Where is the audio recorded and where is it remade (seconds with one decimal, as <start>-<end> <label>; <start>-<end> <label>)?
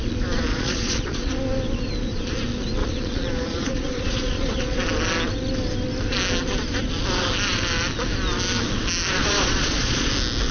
0.0-0.5 recorded; 0.5-1.3 remade; 1.3-2.8 recorded; 2.8-4.8 remade; 4.8-9.2 recorded; 9.2-10.1 remade; 10.1-10.5 recorded